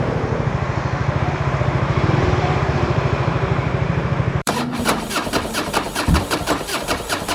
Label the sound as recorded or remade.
remade